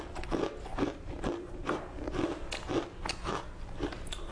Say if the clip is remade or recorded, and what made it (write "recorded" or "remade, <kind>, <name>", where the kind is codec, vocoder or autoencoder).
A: recorded